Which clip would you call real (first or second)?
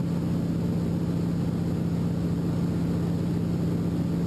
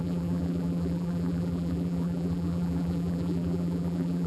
first